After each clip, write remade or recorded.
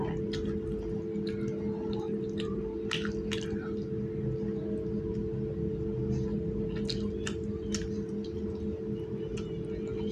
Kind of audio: recorded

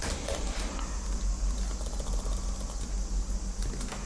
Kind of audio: recorded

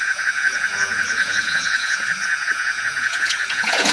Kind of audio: remade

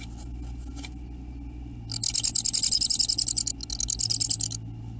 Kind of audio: recorded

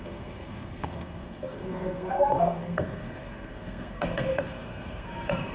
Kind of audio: remade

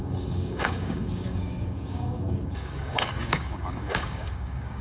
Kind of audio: remade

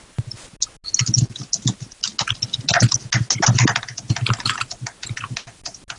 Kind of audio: recorded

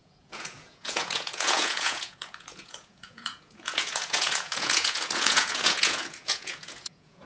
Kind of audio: remade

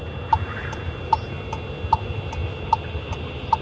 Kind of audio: recorded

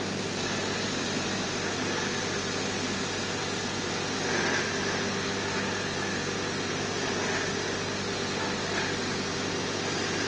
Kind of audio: recorded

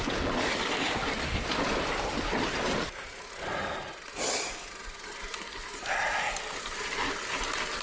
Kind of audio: recorded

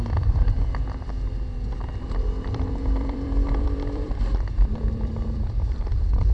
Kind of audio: remade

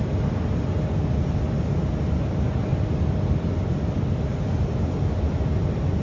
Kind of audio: recorded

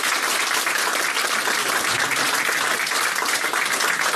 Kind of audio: recorded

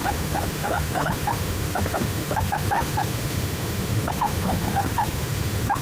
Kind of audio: remade